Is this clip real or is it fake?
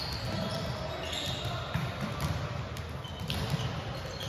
real